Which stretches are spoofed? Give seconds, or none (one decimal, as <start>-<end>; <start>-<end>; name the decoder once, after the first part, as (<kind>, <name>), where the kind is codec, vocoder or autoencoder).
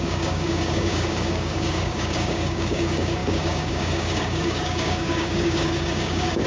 0.0-6.5 (codec, DAC)